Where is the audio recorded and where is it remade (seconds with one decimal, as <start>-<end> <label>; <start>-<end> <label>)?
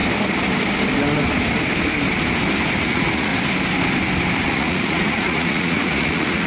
0.0-2.8 recorded; 2.8-3.3 remade; 3.3-4.4 recorded; 4.4-6.5 remade